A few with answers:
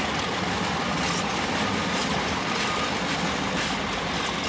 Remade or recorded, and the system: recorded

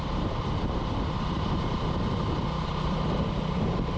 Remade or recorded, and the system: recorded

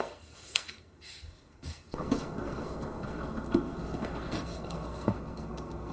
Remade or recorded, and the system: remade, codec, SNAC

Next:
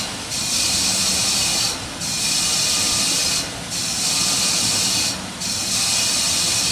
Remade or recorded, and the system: remade, vocoder, BigVGAN v2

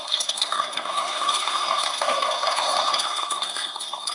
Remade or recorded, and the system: remade, codec, SNAC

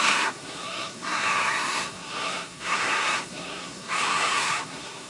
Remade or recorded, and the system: remade, codec, SNAC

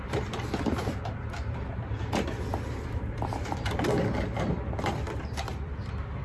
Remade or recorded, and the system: remade, vocoder, BigVGAN v2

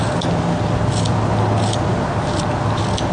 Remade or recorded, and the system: recorded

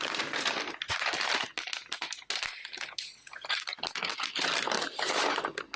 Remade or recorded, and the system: recorded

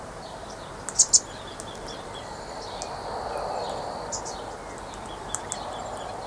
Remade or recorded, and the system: recorded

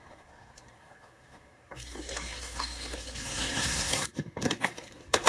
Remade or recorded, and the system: remade, codec, SNAC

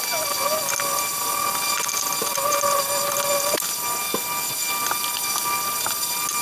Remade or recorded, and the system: recorded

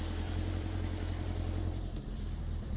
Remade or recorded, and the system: remade, vocoder, BigVGAN v2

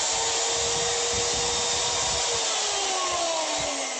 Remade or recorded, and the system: recorded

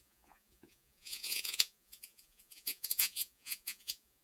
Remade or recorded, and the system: remade, vocoder, Vocos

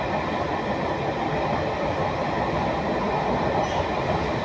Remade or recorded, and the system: recorded